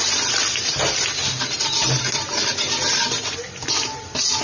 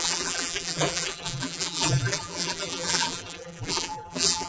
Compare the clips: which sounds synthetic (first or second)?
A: second